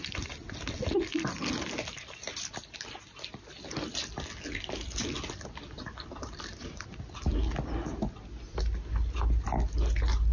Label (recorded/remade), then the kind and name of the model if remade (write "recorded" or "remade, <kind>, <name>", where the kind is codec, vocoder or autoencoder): recorded